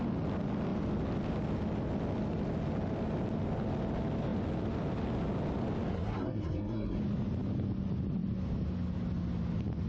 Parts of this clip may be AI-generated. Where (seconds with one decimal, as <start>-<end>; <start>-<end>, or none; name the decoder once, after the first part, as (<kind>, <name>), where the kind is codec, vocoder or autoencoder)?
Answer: 5.9-7.0 (codec, SNAC)